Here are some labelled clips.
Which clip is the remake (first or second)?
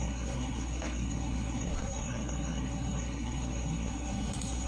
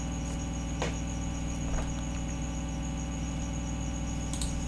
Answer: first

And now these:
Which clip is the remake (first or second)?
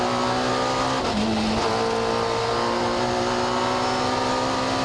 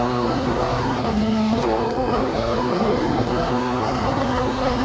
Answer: second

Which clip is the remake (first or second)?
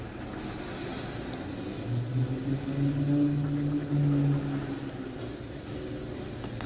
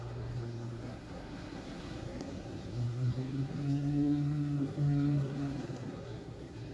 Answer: second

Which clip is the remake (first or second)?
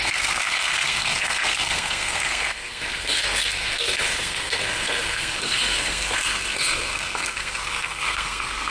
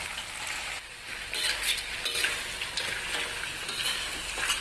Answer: first